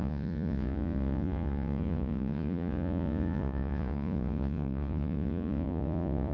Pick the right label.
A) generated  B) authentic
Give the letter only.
A